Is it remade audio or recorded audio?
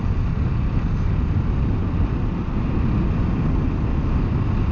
recorded